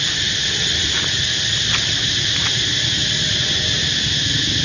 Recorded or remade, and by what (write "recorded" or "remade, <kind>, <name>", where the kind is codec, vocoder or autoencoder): recorded